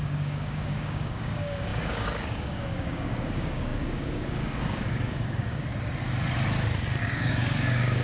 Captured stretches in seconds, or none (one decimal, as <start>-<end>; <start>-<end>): 5.7-7.0